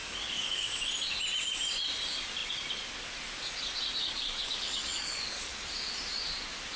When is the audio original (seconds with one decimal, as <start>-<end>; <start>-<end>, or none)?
0.8-4.0; 5.5-6.8